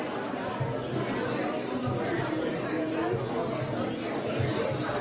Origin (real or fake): real